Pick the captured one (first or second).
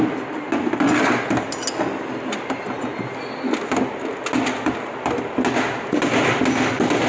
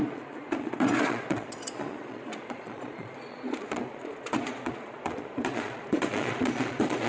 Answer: first